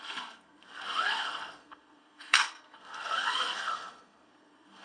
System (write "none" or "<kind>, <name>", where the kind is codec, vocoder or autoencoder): codec, SNAC